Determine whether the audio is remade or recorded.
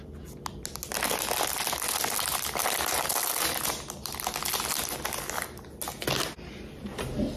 recorded